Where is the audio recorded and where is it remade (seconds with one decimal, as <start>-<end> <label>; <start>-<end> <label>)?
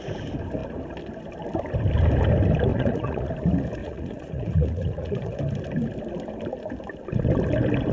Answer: 0.0-2.7 recorded; 2.7-3.3 remade; 3.3-3.8 recorded; 3.8-5.4 remade; 5.4-7.9 recorded